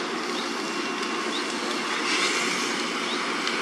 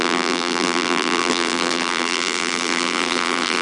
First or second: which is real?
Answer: first